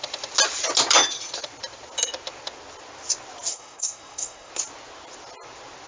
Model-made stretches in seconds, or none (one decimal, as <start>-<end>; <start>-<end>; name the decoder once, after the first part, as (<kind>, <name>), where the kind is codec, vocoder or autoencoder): 3.5-4.5 (codec, SNAC)